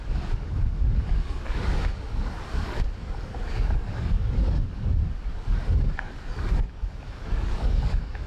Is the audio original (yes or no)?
no